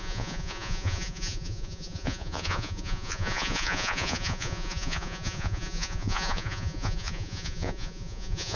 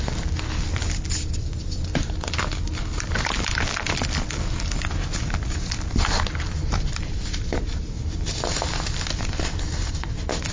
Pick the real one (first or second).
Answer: second